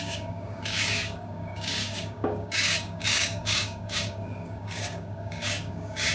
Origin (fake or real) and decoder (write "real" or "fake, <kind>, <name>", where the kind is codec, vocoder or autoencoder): fake, codec, DAC